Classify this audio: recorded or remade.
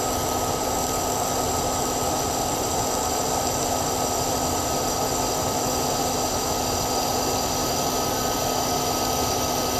recorded